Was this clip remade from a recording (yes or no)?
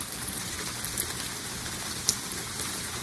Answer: no